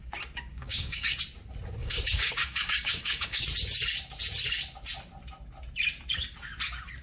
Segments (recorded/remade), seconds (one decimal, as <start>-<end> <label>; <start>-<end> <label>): 0.0-0.5 recorded; 0.5-1.2 remade; 1.2-1.8 recorded; 1.8-3.4 remade; 3.4-7.0 recorded

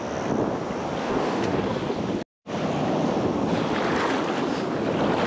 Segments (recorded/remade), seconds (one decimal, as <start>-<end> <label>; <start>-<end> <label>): 0.0-1.0 recorded; 1.0-1.9 remade; 1.9-5.3 recorded

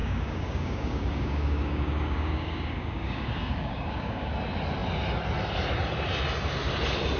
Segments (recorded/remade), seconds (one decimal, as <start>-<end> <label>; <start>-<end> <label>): 0.0-4.3 remade; 4.3-7.2 recorded

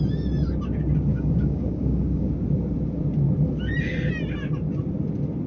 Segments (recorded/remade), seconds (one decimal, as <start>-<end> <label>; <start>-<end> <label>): 0.0-1.1 recorded; 1.1-2.3 remade; 2.3-5.5 recorded

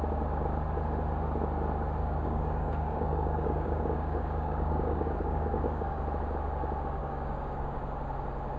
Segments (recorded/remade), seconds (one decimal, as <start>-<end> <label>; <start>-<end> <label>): 0.0-2.0 recorded; 2.0-6.0 remade; 6.0-7.0 recorded; 7.0-7.8 remade; 7.8-8.6 recorded

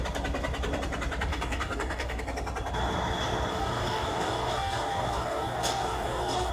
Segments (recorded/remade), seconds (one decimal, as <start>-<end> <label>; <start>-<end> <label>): 0.0-1.3 recorded; 1.3-2.2 remade; 2.2-3.5 recorded; 3.5-6.5 remade

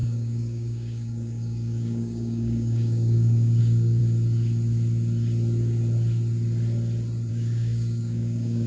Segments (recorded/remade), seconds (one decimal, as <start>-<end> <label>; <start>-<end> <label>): 0.0-4.0 remade; 4.0-7.3 recorded; 7.3-8.7 remade